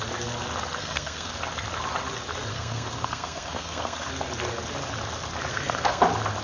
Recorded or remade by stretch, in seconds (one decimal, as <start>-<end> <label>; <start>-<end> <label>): 0.0-0.8 recorded; 0.8-1.3 remade; 1.3-2.5 recorded; 2.5-4.1 remade; 4.1-5.5 recorded; 5.5-6.0 remade; 6.0-6.4 recorded